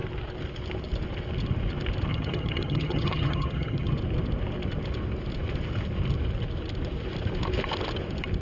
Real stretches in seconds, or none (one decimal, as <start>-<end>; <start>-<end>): 0.0-2.1; 3.9-8.4